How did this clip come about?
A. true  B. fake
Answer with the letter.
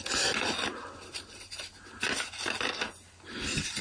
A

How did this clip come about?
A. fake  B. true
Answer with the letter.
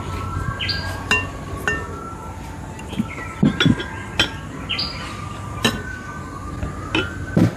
B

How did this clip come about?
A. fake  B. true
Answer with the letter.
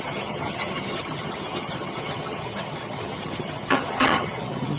A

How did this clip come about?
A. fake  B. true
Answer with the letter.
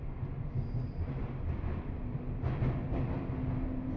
B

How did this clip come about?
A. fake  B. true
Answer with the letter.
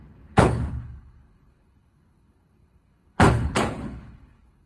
A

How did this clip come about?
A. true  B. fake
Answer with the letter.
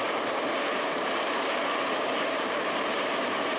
B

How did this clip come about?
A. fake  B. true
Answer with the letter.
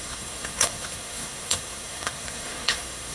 A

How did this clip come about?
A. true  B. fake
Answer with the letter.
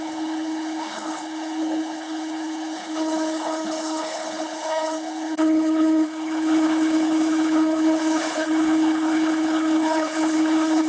B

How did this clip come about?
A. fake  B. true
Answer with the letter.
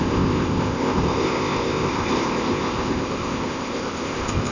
A